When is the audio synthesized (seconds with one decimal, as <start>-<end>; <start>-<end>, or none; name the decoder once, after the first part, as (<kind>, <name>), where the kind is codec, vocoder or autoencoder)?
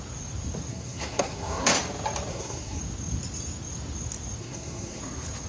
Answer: 0.7-1.7 (codec, SNAC); 2.3-2.8; 4.4-5.0